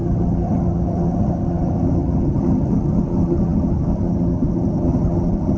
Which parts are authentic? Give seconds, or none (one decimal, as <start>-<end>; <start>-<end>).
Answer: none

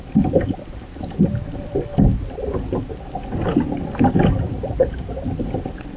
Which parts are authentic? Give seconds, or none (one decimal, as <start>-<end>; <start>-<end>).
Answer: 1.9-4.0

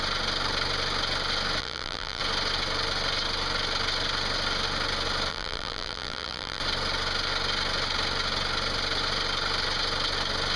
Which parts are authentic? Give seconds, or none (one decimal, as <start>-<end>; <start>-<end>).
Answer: 0.0-1.6; 2.2-5.3; 6.6-10.6

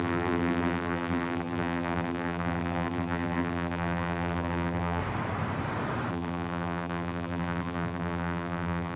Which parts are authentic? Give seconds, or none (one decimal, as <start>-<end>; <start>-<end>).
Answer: 5.0-6.1

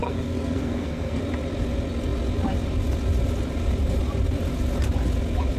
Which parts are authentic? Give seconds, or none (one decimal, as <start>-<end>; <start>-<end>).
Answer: 1.2-5.6

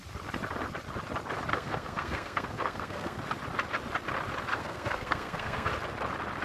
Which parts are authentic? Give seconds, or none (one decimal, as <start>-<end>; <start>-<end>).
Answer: 0.0-1.5; 3.2-4.5; 5.7-6.4

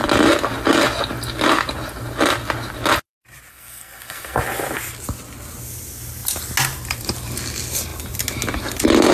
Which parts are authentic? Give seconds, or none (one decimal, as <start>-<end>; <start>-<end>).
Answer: 0.0-3.5; 4.4-9.1

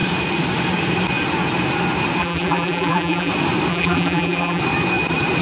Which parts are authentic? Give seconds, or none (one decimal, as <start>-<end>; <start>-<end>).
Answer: 0.0-2.2; 3.3-3.7; 4.6-5.4